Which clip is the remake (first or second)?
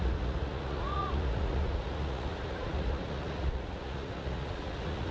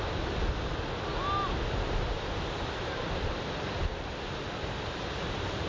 first